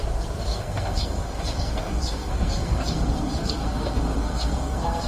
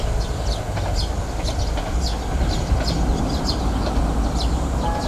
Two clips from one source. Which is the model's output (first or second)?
first